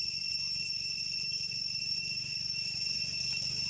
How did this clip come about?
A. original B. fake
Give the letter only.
A